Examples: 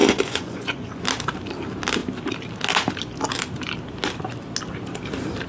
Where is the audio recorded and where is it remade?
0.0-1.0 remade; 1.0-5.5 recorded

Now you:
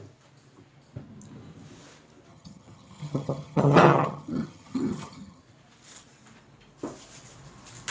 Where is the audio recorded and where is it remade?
0.0-2.3 recorded; 2.3-5.4 remade; 5.4-7.9 recorded

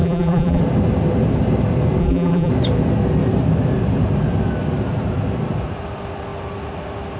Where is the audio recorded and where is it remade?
0.0-0.6 remade; 0.6-2.0 recorded; 2.0-2.5 remade; 2.5-7.2 recorded

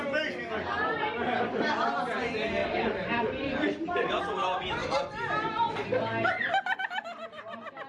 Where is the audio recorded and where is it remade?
0.0-2.6 recorded; 2.6-4.2 remade; 4.2-7.9 recorded